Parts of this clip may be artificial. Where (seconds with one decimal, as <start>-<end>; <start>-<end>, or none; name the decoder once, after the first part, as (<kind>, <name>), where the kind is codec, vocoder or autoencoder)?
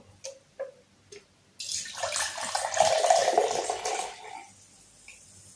none